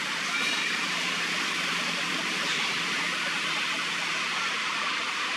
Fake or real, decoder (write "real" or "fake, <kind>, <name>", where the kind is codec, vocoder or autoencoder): fake, vocoder, BigVGAN v2